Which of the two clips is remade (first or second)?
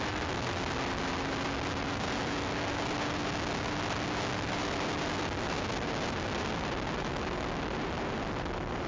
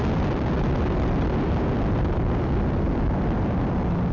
second